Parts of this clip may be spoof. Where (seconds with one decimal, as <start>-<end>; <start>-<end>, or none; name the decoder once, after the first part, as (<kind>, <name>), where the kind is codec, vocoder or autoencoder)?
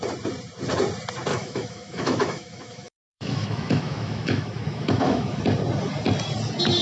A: 1.3-5.4 (autoencoder, DAC-VAE)